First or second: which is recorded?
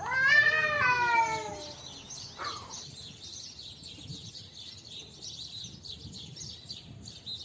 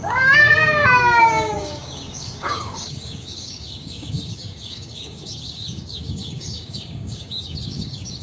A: first